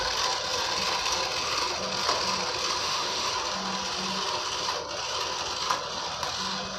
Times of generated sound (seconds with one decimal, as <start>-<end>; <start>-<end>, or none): 2.8-3.3